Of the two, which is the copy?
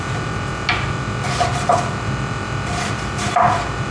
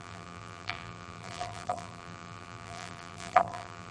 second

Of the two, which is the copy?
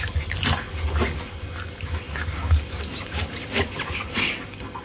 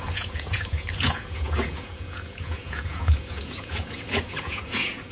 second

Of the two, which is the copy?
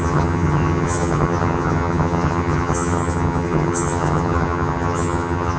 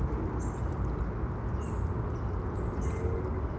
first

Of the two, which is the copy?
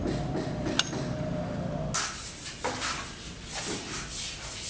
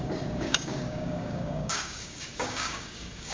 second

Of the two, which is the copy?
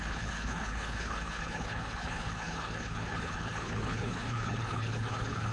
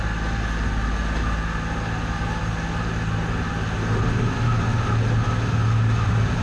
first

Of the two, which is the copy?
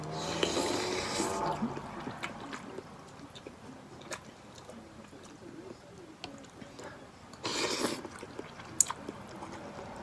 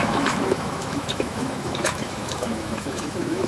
second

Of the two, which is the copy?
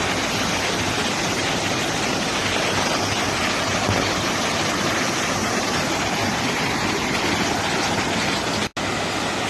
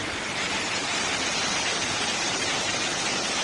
second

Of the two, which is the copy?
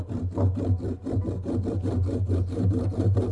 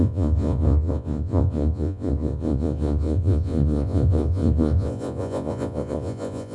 second